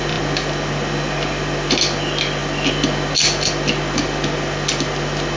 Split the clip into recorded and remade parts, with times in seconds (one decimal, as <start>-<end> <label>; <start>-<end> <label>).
0.0-5.4 recorded